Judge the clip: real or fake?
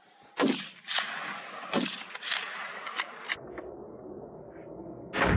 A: real